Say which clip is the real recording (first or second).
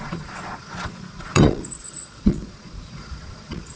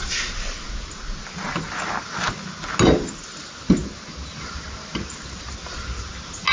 second